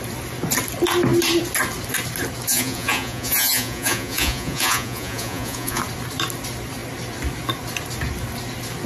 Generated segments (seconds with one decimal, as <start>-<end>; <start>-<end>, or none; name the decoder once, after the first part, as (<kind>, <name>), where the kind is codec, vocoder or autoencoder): 2.5-5.8 (vocoder, Vocos)